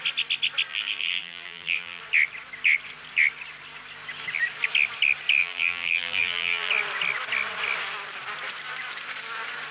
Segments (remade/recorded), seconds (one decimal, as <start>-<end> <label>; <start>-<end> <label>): 0.0-0.7 recorded; 0.7-2.0 remade; 2.0-5.4 recorded; 5.4-6.7 remade; 6.7-9.7 recorded

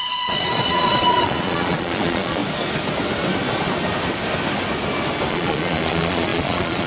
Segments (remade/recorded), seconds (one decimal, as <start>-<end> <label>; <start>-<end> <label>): 0.0-2.4 remade; 2.4-5.3 recorded; 5.3-6.9 remade

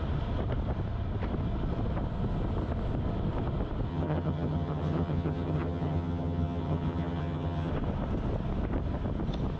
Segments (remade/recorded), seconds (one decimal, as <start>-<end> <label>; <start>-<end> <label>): 0.0-3.9 recorded; 3.9-7.7 remade; 7.7-9.6 recorded

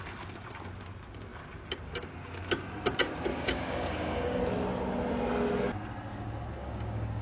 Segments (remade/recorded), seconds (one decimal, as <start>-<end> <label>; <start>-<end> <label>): 0.0-3.3 recorded; 3.3-4.4 remade; 4.4-6.6 recorded; 6.6-7.2 remade

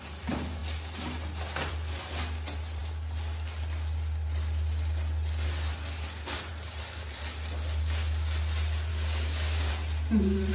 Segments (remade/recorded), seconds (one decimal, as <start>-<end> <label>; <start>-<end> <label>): 0.0-8.9 recorded; 8.9-9.7 remade; 9.7-10.5 recorded

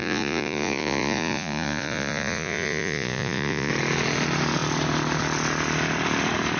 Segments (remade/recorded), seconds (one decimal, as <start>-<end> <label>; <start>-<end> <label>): 0.0-3.7 remade; 3.7-6.6 recorded

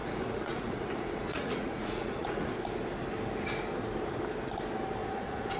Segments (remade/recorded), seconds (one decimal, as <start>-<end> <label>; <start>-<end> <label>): 0.0-2.5 remade; 2.5-5.0 recorded; 5.0-5.6 remade

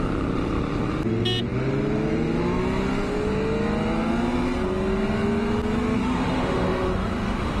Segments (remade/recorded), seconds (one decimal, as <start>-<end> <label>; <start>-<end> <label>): 0.0-6.0 recorded; 6.0-7.6 remade